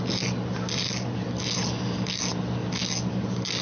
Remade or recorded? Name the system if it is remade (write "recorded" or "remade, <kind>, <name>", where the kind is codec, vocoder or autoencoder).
recorded